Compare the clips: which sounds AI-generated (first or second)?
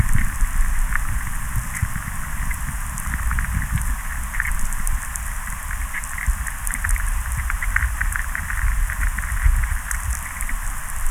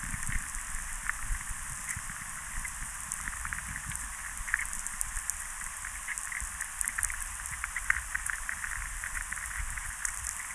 second